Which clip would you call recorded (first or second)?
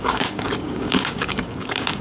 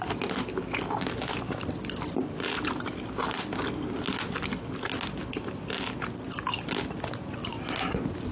second